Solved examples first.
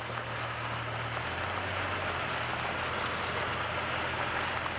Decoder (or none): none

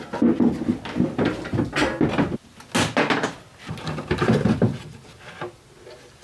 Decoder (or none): none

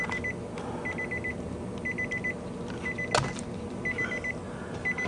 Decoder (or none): none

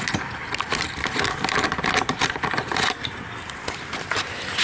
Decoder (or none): none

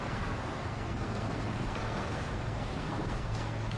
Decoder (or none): codec, SNAC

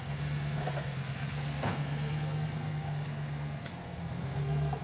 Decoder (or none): codec, SNAC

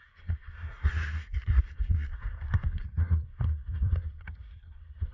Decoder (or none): codec, SNAC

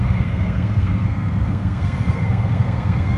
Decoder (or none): codec, SNAC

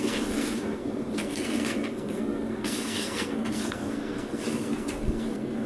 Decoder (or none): codec, SNAC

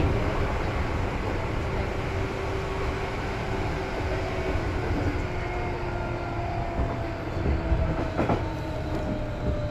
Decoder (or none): none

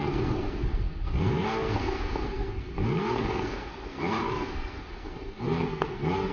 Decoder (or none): codec, SNAC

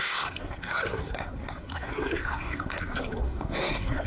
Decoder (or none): codec, SNAC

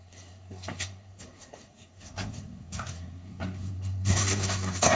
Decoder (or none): codec, SNAC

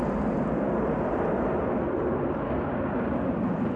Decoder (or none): none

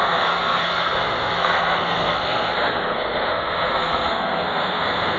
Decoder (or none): codec, SNAC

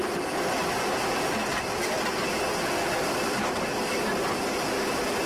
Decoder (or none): none